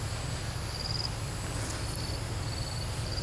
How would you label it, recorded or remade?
recorded